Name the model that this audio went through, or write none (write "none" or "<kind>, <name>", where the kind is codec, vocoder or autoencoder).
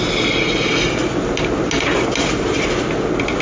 none